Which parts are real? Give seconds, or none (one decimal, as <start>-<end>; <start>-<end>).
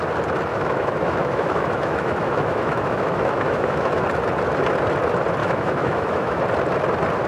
0.0-0.5; 4.0-5.4; 6.4-7.3